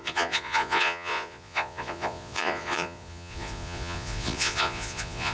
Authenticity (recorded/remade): remade